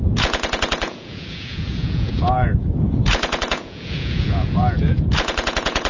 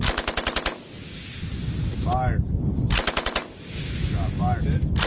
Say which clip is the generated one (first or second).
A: first